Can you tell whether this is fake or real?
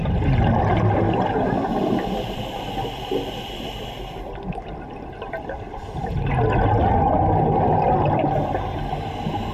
real